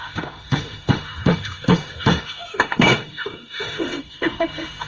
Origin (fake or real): fake